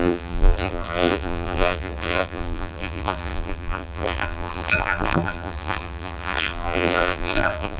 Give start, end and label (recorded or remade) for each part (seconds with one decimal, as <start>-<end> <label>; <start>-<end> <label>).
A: 0.0-7.8 remade